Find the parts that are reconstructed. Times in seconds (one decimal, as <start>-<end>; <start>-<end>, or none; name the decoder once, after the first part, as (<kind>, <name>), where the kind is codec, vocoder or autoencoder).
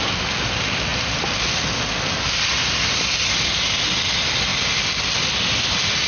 none